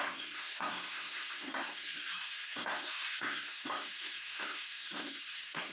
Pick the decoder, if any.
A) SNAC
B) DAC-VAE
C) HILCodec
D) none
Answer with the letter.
A